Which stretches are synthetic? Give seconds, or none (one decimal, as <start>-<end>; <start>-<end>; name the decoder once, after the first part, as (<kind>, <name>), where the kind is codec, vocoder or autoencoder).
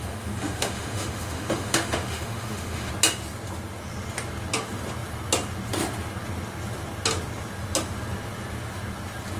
0.0-2.9 (autoencoder, DAC-VAE)